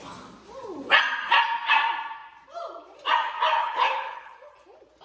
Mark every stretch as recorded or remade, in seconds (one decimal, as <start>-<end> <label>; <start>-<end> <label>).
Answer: 0.0-3.6 recorded; 3.6-4.5 remade; 4.5-5.0 recorded